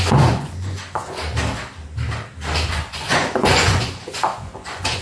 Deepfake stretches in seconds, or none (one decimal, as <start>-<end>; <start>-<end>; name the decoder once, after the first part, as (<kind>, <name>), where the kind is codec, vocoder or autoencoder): 0.0-1.2 (vocoder, Vocos); 2.7-5.0